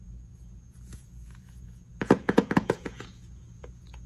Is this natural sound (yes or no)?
no